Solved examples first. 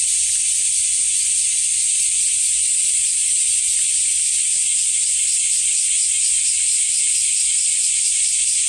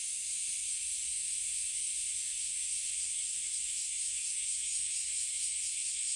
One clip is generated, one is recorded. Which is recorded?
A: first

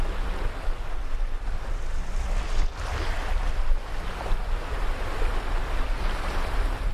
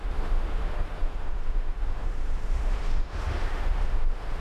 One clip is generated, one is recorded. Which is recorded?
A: first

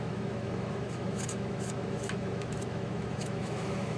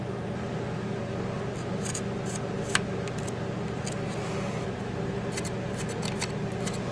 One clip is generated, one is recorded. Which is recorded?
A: second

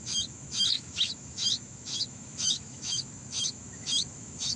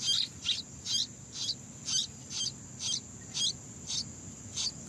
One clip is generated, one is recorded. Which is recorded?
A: second